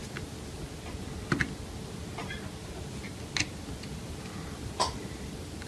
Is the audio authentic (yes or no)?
yes